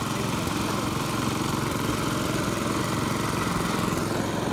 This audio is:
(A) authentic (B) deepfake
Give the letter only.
A